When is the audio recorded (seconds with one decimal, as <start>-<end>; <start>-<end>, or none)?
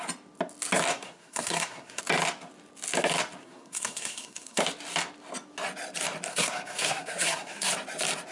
0.0-0.9; 2.0-3.4; 4.6-6.3; 7.7-8.3